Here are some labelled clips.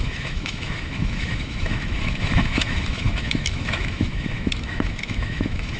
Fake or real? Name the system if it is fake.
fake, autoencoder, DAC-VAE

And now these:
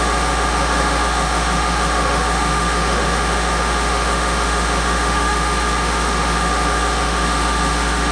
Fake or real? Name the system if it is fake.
fake, autoencoder, DAC-VAE